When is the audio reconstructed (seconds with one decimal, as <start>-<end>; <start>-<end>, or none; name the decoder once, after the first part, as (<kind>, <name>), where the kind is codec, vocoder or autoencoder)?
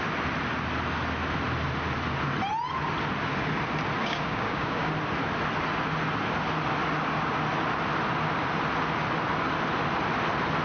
4.0-4.9 (codec, DAC)